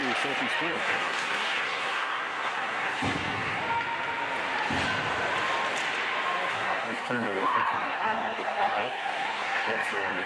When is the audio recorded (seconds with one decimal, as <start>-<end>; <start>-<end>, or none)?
0.0-0.7; 3.6-6.5